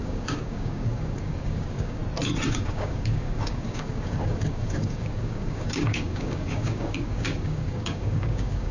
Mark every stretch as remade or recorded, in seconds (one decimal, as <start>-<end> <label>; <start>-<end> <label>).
0.0-2.0 remade; 2.0-2.5 recorded; 2.5-8.7 remade